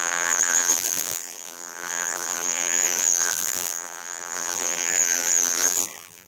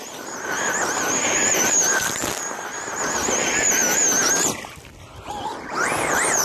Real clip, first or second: second